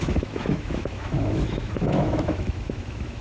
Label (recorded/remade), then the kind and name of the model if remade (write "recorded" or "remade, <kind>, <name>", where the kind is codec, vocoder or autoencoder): remade, autoencoder, DAC-VAE